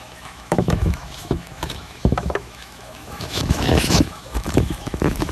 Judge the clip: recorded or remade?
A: remade